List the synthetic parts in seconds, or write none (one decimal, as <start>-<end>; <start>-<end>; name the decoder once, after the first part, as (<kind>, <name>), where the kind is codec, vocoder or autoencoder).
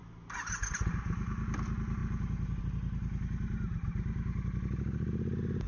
none